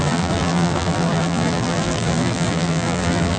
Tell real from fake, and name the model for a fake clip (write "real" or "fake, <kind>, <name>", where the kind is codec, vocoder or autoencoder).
fake, vocoder, BigVGAN v2